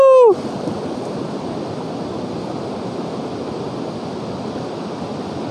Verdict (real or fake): real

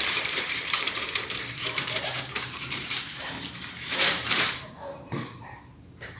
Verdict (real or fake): fake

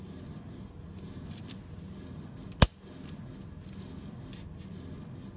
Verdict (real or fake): real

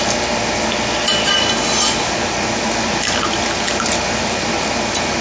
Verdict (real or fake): real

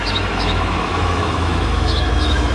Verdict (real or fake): fake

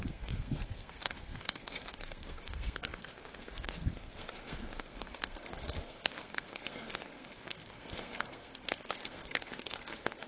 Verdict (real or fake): fake